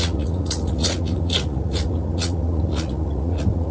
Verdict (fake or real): fake